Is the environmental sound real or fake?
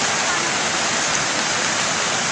real